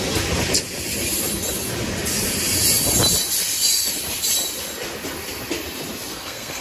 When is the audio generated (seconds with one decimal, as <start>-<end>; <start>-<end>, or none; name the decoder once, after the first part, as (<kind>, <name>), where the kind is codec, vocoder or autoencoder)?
6.1-6.6 (codec, SNAC)